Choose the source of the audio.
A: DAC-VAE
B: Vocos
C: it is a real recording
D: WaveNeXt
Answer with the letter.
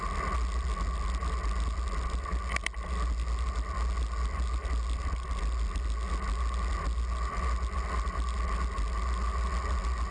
C